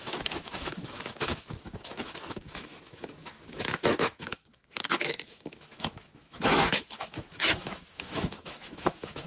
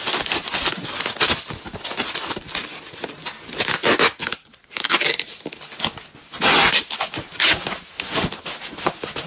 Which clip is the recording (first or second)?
second